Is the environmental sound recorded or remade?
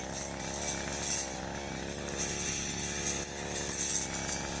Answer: recorded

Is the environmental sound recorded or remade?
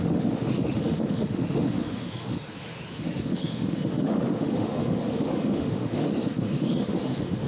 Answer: remade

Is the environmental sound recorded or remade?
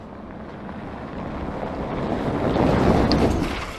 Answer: recorded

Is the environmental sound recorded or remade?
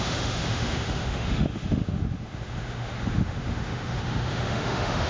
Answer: remade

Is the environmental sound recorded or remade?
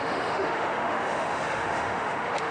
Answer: remade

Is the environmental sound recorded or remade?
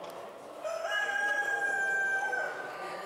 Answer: recorded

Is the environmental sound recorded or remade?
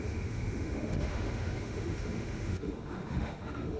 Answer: remade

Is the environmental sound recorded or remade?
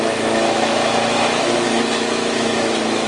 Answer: remade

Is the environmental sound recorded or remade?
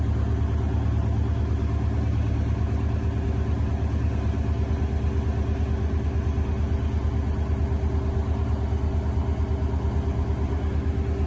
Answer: recorded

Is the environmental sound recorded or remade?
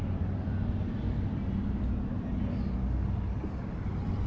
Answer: recorded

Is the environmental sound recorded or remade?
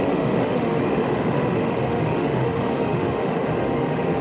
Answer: remade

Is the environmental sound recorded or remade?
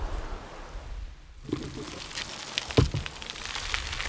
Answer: recorded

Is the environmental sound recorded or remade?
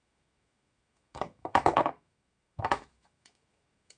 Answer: remade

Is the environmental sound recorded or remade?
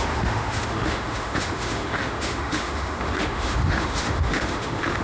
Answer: remade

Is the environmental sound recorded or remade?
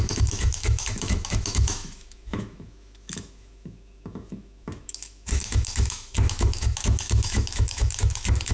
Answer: remade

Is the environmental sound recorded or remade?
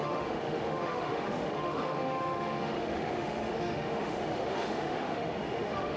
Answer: remade